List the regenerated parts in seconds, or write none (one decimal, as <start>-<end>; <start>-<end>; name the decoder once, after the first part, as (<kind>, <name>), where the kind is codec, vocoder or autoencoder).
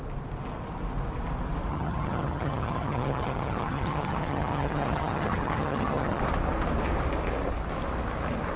1.7-6.2 (vocoder, HiFi-GAN)